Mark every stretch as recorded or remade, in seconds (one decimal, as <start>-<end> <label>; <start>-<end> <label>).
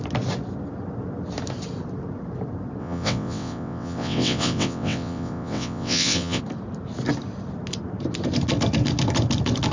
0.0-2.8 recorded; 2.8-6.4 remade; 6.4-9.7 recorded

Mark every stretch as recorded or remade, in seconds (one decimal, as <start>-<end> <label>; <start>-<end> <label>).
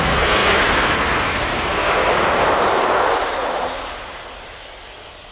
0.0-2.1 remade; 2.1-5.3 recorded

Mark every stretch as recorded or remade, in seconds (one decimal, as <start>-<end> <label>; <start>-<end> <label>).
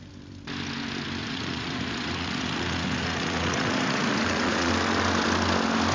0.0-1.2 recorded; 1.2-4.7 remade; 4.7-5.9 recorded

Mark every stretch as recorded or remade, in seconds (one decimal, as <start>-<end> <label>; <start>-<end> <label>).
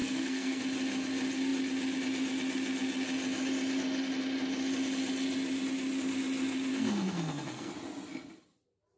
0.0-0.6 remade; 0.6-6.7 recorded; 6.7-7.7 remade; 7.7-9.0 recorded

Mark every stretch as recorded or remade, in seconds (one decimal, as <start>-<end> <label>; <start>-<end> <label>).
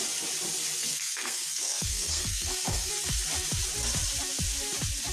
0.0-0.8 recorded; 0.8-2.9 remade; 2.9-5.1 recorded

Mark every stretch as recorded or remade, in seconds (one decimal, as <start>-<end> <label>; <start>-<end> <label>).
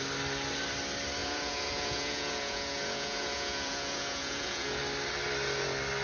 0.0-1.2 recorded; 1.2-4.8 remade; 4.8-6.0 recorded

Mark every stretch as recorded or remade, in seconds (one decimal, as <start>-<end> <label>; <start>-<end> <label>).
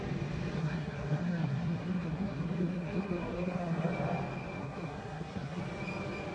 0.0-0.6 recorded; 0.6-3.9 remade; 3.9-4.6 recorded; 4.6-5.6 remade; 5.6-6.3 recorded